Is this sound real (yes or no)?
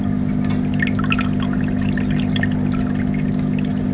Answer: yes